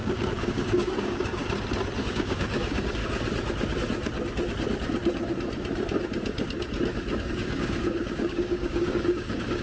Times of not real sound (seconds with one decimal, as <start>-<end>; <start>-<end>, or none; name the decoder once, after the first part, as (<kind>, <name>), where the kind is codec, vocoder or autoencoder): 0.0-1.4 (codec, DAC); 2.0-3.0; 7.2-9.6